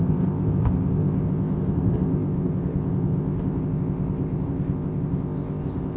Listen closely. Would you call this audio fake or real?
fake